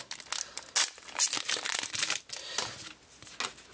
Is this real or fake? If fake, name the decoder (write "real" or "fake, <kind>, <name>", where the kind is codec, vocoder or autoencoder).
real